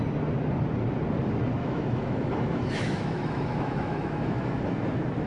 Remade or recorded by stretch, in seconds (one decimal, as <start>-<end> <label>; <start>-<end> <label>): 0.0-1.6 recorded; 1.6-4.8 remade; 4.8-5.3 recorded